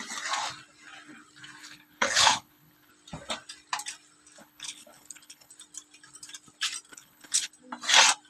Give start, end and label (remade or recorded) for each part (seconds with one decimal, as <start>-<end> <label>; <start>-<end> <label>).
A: 0.0-1.6 recorded; 1.6-2.9 remade; 2.9-4.4 recorded; 4.4-5.5 remade; 5.5-6.9 recorded; 6.9-7.5 remade; 7.5-8.3 recorded